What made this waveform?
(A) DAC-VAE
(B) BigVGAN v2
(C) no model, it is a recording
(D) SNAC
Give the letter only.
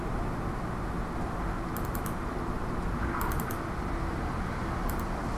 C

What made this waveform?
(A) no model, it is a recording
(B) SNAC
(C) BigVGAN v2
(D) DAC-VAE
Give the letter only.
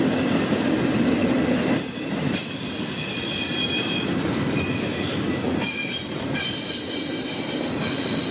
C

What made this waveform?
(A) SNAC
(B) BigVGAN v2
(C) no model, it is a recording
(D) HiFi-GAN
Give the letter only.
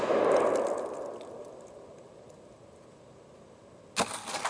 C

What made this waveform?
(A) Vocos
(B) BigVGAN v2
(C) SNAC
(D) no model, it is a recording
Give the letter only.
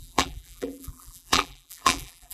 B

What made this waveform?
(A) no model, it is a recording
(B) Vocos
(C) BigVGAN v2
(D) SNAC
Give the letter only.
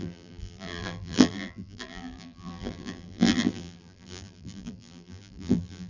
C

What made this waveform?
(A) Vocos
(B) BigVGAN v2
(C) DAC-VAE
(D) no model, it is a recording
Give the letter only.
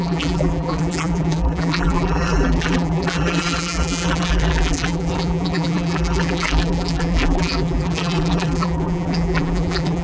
B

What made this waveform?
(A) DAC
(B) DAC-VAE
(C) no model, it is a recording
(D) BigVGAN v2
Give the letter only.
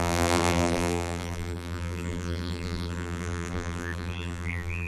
D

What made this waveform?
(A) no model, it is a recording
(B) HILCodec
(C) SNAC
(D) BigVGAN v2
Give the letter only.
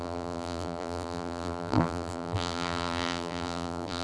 D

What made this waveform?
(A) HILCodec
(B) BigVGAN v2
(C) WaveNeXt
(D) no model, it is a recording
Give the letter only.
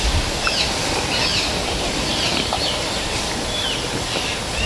D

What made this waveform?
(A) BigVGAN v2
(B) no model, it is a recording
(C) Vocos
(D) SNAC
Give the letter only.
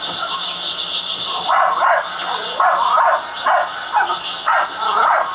B